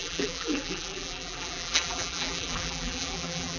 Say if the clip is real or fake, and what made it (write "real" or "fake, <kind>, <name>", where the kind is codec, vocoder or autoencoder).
fake, vocoder, BigVGAN v2